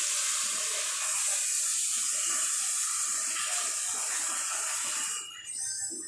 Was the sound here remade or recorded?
recorded